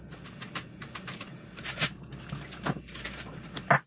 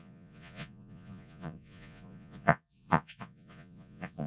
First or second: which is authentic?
first